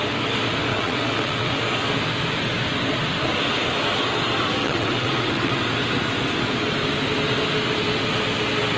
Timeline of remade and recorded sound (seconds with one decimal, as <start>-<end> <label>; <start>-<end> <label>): 0.0-0.7 recorded; 0.7-1.5 remade; 1.5-4.6 recorded; 4.6-5.6 remade; 5.6-8.8 recorded